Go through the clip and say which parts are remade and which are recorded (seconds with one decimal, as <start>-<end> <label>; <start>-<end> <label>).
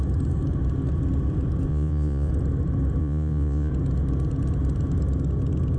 0.0-1.7 recorded; 1.7-2.3 remade; 2.3-3.0 recorded; 3.0-3.7 remade; 3.7-5.8 recorded